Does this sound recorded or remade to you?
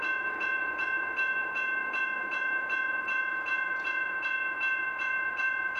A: remade